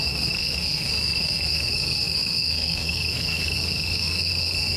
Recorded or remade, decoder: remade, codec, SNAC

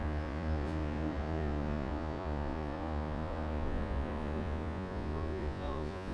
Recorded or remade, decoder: remade, vocoder, Vocos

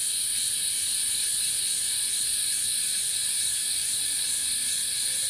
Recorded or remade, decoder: remade, vocoder, Vocos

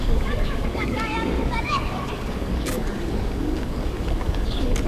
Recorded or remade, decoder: remade, codec, DAC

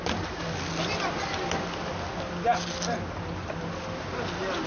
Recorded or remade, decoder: recorded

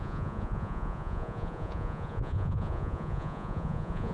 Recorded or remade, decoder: remade, vocoder, Vocos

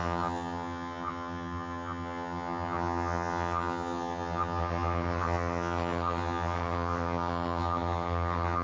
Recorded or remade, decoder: remade, vocoder, HiFi-GAN